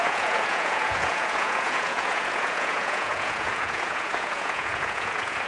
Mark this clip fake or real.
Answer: fake